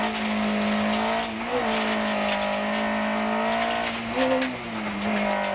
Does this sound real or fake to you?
real